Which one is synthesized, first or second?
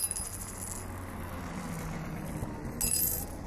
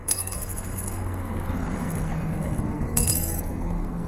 second